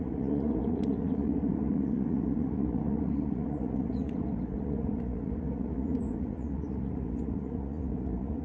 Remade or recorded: remade